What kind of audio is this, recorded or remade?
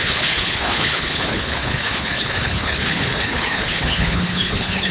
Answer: remade